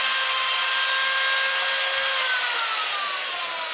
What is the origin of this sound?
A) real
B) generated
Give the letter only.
A